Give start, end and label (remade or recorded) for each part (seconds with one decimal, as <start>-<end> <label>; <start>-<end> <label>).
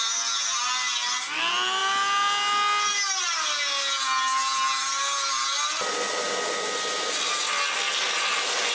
0.0-8.7 recorded